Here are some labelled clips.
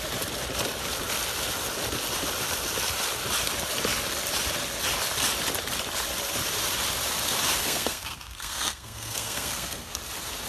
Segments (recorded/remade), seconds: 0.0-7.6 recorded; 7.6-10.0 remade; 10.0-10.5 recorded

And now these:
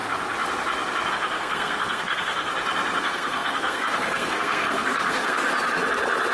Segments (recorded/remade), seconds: 0.0-1.1 recorded; 1.1-2.5 remade; 2.5-3.0 recorded; 3.0-5.4 remade; 5.4-6.3 recorded